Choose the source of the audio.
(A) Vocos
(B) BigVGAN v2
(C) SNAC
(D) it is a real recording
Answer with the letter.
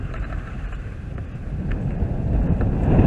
B